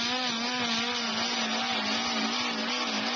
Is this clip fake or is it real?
real